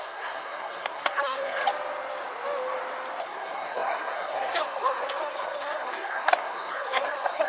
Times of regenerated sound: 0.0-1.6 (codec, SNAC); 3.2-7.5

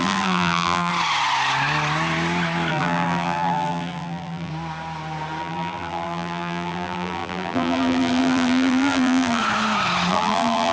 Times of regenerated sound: 0.0-0.9 (vocoder, BigVGAN v2); 2.7-4.5; 5.4-9.4; 10.1-10.7

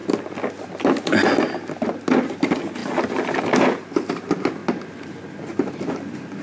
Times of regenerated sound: none

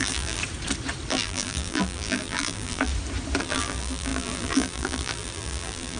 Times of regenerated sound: 0.0-0.4 (vocoder, BigVGAN v2); 1.1-2.9; 3.4-6.0

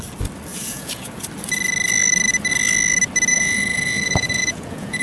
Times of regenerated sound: 0.5-1.2 (vocoder, Vocos); 3.3-5.0

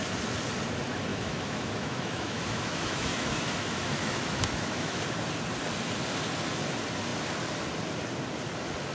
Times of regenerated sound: 1.1-5.0 (autoencoder, DAC-VAE)

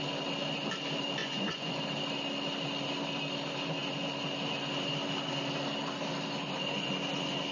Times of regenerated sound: 1.2-1.8 (vocoder, Vocos)